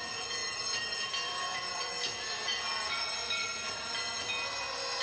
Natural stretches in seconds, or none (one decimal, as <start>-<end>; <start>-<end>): 0.0-0.4; 1.9-2.5; 3.5-5.0